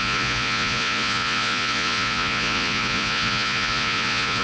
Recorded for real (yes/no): no